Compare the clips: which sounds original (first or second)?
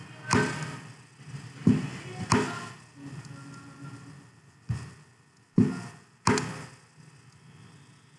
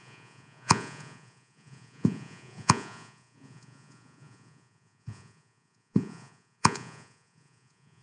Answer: first